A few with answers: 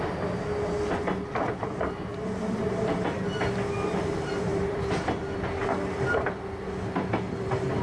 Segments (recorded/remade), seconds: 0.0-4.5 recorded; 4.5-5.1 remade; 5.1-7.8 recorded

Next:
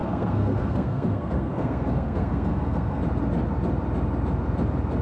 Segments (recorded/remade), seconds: 0.0-3.0 remade; 3.0-5.0 recorded

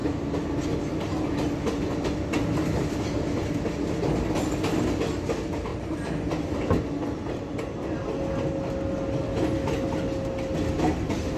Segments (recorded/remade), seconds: 0.0-5.7 recorded; 5.7-6.3 remade; 6.3-11.4 recorded

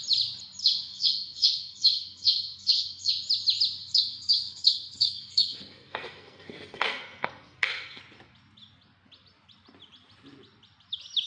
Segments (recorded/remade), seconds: 0.0-0.6 recorded; 0.6-3.1 remade; 3.1-3.8 recorded; 3.8-8.0 remade; 8.0-11.3 recorded

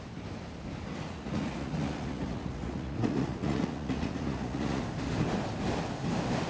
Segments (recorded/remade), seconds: 0.0-0.9 recorded; 0.9-4.8 remade; 4.8-6.5 recorded